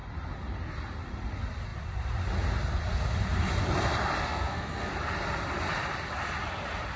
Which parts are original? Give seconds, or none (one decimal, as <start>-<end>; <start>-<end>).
0.0-4.2; 4.9-7.0